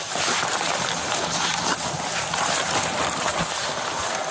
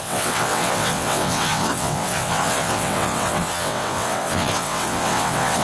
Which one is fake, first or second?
second